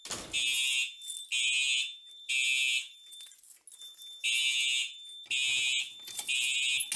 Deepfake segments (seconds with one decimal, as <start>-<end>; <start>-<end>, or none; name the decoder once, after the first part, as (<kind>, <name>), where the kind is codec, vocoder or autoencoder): none